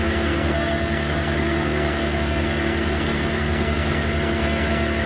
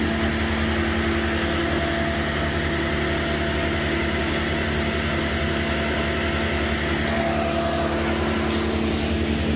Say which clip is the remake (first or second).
first